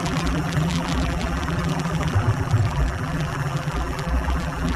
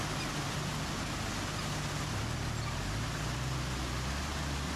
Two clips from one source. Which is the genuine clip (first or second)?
second